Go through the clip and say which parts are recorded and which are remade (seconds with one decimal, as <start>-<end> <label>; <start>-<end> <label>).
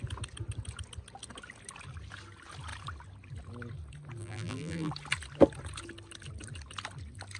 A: 0.0-4.2 recorded; 4.2-4.9 remade; 4.9-7.4 recorded